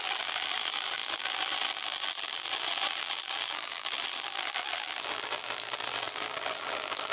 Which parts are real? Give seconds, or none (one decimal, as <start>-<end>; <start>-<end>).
none